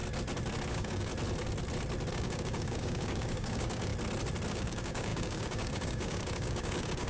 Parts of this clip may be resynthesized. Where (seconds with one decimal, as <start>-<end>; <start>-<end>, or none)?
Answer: 0.7-1.1; 2.1-3.9; 4.5-7.1